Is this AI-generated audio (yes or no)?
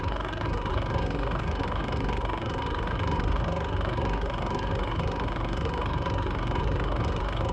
yes